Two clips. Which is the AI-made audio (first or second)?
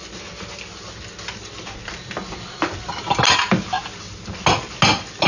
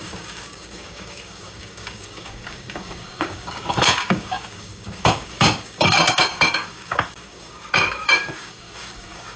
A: second